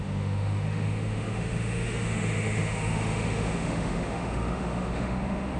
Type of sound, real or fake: fake